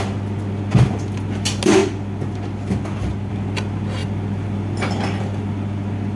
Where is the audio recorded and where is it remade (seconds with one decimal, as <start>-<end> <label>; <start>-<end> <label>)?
0.0-6.2 recorded